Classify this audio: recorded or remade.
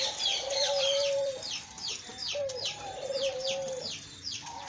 remade